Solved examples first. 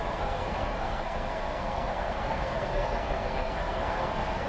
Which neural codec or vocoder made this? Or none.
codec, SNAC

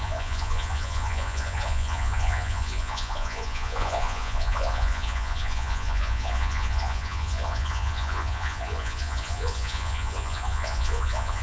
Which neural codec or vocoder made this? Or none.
vocoder, Vocos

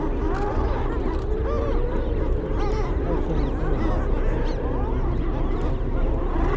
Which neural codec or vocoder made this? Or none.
none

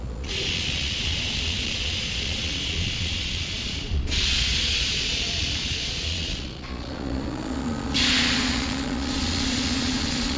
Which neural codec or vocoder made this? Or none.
vocoder, Vocos